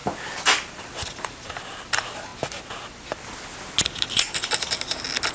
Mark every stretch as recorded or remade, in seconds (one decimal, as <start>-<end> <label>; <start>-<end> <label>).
0.0-5.3 recorded